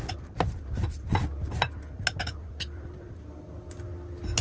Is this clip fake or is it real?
real